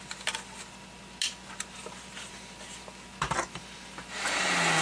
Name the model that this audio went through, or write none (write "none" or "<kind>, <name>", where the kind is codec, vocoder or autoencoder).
none